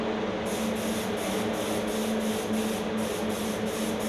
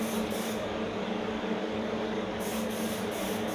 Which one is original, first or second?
first